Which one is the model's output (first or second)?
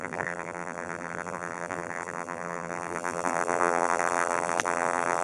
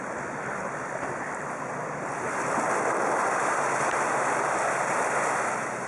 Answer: first